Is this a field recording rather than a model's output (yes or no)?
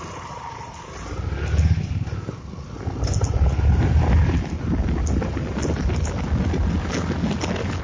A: yes